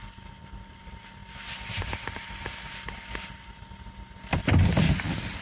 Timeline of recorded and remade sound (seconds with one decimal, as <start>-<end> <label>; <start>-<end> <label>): 0.0-5.4 recorded